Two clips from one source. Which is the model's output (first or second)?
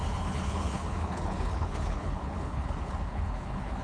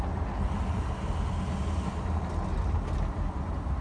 first